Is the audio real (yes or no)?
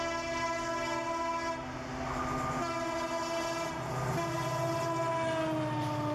yes